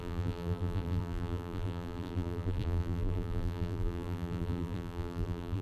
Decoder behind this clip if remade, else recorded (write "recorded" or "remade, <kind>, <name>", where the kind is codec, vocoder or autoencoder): remade, vocoder, BigVGAN v2